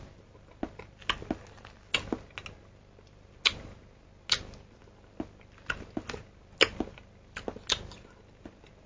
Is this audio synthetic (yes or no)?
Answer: no